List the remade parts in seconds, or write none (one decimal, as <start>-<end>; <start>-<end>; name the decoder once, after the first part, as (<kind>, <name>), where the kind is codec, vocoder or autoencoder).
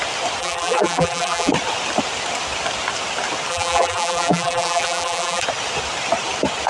0.4-1.5 (vocoder, BigVGAN v2); 3.5-5.4